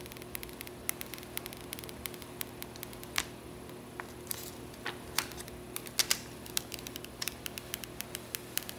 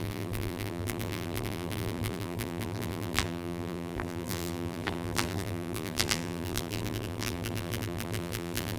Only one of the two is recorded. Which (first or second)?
first